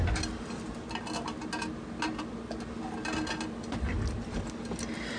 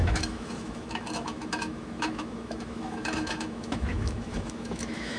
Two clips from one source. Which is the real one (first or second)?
first